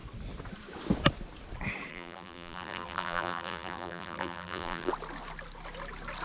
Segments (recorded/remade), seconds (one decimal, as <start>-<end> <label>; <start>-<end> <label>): 0.0-1.9 recorded; 1.9-4.9 remade; 4.9-6.2 recorded